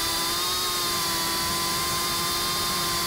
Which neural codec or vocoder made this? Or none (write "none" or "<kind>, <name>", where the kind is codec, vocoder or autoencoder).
none